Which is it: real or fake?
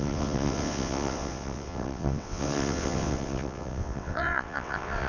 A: fake